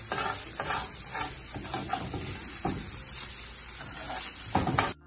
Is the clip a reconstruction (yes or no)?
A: no